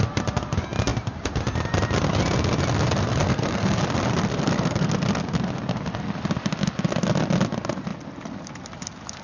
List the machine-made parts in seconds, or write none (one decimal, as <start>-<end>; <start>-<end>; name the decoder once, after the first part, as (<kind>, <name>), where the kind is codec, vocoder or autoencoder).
3.2-3.8 (codec, SNAC); 4.3-4.9

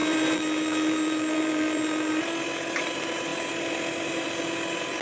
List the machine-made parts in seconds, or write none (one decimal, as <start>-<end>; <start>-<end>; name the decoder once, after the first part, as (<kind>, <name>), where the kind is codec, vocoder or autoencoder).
0.0-2.2 (vocoder, BigVGAN v2)

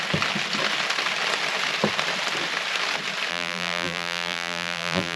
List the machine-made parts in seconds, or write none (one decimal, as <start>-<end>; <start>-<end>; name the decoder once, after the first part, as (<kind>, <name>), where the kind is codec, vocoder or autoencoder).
3.3-5.2 (vocoder, BigVGAN v2)

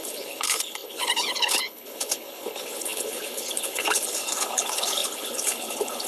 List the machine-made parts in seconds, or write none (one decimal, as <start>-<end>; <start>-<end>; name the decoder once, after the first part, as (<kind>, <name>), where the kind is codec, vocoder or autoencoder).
0.0-6.1 (codec, HILCodec)

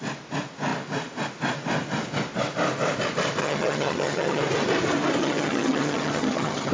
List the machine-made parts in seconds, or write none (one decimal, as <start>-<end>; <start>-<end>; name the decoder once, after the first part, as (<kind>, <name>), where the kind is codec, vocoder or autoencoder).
3.4-4.4 (vocoder, HiFi-GAN); 5.2-6.7